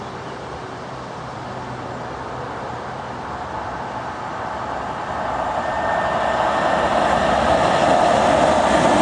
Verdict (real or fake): real